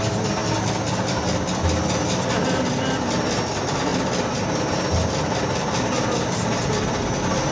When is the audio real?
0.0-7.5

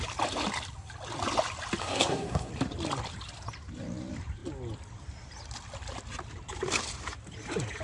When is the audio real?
0.0-1.8; 2.5-7.8

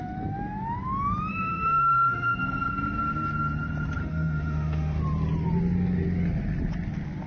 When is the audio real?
0.0-1.3; 2.4-4.0; 5.0-7.3

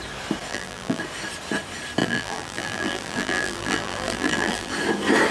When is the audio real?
0.0-0.5; 1.0-2.0; 4.7-5.3